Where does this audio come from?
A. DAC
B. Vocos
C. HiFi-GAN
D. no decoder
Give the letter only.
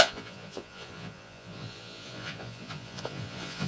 B